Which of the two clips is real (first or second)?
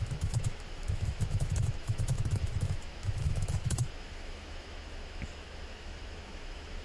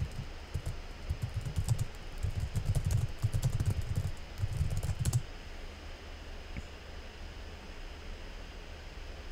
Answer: second